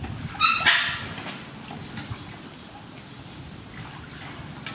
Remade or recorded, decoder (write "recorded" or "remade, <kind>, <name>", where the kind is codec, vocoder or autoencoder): recorded